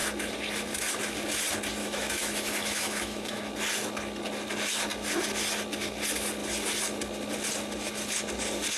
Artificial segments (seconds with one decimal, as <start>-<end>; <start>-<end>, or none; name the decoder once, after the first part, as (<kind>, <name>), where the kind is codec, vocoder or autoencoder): 1.8-3.5 (autoencoder, DAC-VAE)